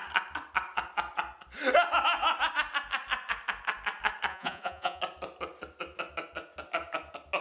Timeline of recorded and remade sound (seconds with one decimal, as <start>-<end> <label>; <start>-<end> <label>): 0.0-4.3 recorded; 4.3-5.0 remade; 5.0-7.4 recorded